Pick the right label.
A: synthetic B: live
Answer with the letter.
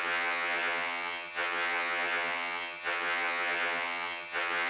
A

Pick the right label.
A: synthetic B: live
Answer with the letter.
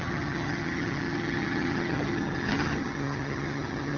A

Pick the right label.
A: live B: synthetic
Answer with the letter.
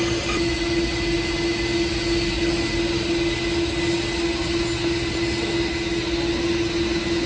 A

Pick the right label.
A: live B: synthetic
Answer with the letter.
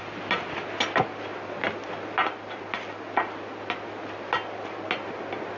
A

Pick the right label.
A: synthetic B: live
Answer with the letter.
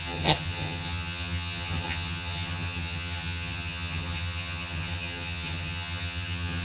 A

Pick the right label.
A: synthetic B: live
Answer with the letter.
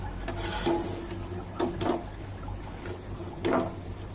B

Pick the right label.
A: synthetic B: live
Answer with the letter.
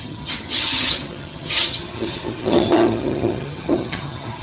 A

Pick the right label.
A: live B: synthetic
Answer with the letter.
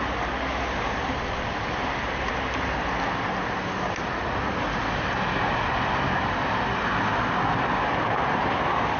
A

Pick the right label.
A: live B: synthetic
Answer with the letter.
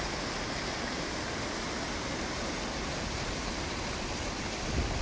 A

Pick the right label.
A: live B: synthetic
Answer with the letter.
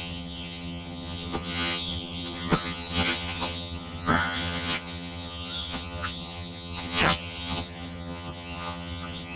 B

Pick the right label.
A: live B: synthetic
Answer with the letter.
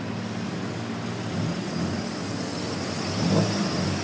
A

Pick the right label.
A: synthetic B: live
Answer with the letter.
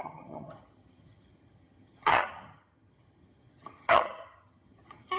A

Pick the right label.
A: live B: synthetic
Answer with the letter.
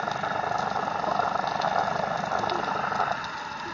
A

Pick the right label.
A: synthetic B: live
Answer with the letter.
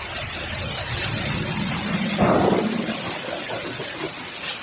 B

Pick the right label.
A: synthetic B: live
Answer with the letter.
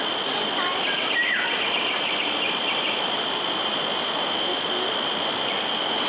B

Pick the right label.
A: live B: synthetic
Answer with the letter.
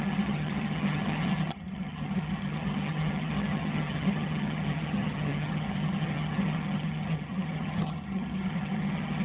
B